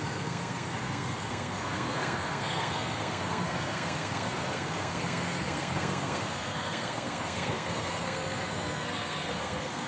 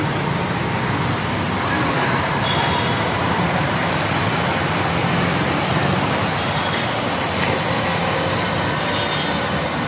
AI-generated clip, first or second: first